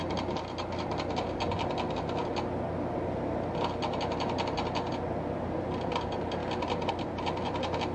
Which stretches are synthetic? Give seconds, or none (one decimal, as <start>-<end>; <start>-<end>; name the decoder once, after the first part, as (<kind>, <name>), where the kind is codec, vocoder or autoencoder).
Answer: none